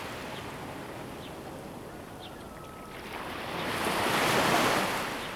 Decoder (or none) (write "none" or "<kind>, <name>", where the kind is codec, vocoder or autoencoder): none